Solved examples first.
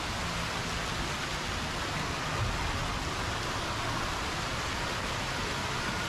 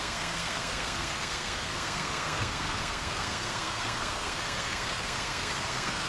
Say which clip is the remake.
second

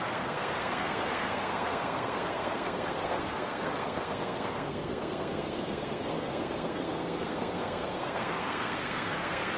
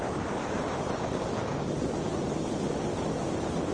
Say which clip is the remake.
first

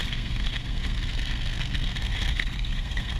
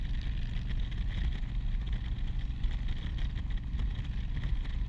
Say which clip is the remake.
first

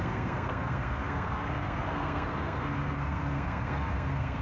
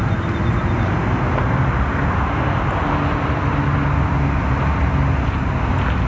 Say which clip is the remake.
first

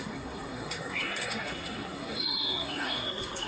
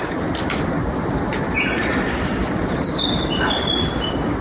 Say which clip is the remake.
first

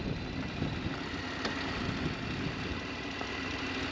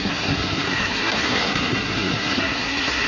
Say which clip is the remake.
second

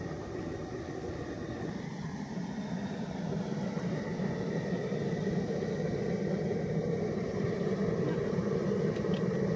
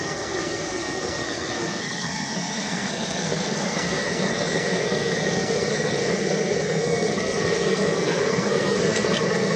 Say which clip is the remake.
second